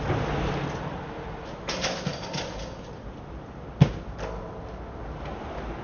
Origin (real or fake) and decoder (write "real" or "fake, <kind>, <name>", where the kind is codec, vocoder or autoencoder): real